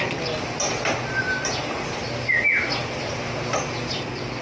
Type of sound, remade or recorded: recorded